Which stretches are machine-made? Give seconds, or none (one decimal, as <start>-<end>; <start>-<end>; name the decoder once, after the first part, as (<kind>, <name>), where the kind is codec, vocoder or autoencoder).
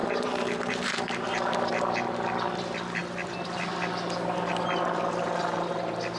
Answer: 0.0-1.7 (vocoder, BigVGAN v2)